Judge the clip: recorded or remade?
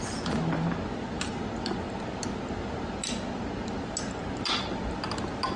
recorded